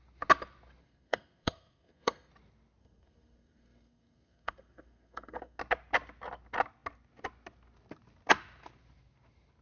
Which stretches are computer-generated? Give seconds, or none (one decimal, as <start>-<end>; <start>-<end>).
0.8-2.3; 2.8-5.6